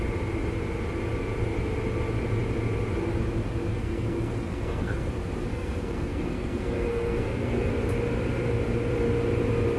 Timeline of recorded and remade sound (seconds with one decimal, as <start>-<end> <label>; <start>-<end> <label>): 0.0-3.7 recorded; 3.7-5.1 remade; 5.1-5.5 recorded; 5.5-7.7 remade; 7.7-9.8 recorded